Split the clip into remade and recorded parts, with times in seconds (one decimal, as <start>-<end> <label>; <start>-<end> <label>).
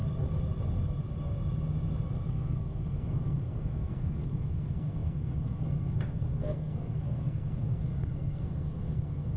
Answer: 0.0-2.1 recorded; 2.1-9.4 remade